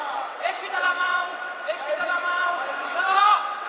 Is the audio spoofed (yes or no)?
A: yes